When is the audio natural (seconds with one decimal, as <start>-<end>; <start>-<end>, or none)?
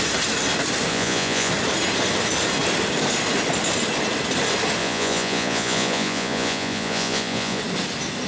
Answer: 0.0-0.9; 1.5-4.8; 7.6-8.3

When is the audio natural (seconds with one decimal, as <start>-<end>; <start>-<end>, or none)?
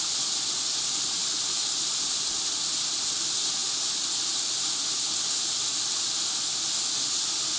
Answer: 0.0-7.6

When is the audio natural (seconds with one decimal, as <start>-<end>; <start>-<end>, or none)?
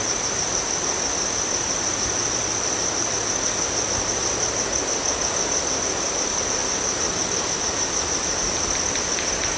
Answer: 0.0-9.6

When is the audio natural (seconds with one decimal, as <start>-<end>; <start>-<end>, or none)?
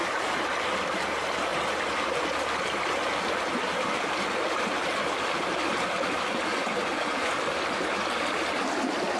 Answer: 0.0-6.5; 7.3-9.2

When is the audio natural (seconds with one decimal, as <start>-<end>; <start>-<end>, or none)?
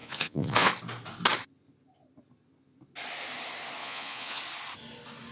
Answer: 0.7-3.8; 4.4-5.3